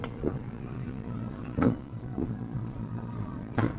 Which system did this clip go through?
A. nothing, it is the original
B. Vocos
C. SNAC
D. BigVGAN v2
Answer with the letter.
B